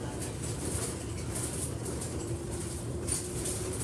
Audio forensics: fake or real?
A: real